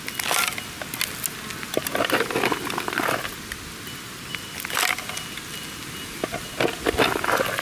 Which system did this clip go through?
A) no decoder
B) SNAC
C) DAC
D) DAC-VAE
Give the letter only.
A